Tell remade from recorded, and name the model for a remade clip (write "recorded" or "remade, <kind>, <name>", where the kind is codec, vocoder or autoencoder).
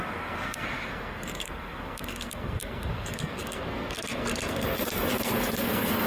remade, codec, SNAC